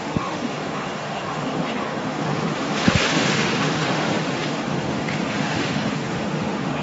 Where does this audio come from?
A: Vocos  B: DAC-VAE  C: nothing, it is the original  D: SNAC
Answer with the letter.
B